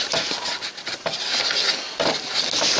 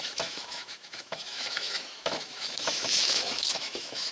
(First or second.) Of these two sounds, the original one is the first